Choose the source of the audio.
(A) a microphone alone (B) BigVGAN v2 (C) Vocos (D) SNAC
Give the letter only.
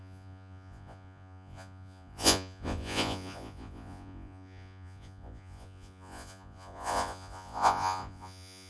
C